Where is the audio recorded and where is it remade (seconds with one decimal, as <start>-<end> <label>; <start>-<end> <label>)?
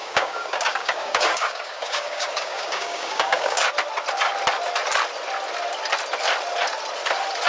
0.0-3.7 remade; 3.7-7.5 recorded